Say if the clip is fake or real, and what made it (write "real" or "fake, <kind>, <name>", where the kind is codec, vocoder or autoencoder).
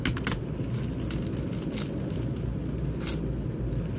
real